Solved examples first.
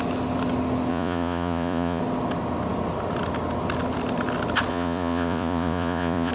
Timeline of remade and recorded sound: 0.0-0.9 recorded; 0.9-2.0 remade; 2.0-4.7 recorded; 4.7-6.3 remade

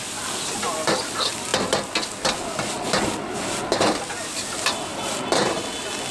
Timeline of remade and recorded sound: 0.0-6.1 recorded

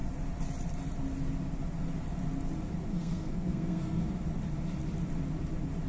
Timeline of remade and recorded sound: 0.0-2.9 recorded; 2.9-4.0 remade; 4.0-5.9 recorded

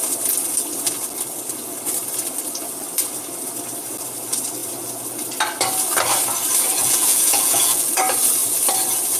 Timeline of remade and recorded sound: 0.0-6.8 recorded; 6.8-7.9 remade; 7.9-9.2 recorded